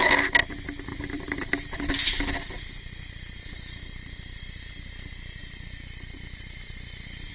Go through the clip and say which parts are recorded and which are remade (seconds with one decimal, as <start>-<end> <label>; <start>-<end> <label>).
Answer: 0.0-0.9 recorded; 0.9-4.9 remade; 4.9-5.4 recorded; 5.4-7.3 remade